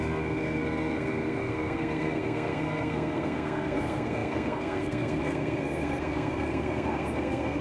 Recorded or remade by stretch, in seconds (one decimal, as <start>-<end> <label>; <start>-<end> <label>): 0.0-7.6 remade